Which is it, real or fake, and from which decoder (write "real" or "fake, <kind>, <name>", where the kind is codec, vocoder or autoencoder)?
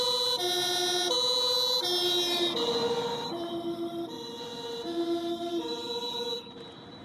real